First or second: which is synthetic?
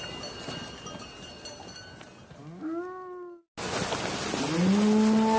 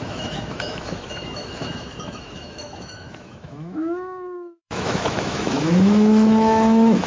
second